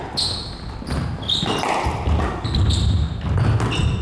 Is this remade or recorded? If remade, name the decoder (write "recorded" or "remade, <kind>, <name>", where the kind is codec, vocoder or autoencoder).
recorded